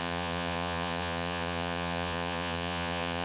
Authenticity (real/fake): fake